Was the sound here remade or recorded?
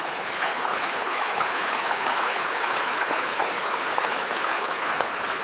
remade